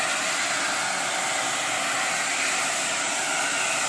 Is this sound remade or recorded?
recorded